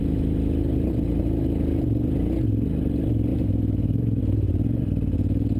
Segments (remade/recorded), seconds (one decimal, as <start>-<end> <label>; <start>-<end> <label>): 0.0-3.3 recorded; 3.3-4.2 remade; 4.2-5.6 recorded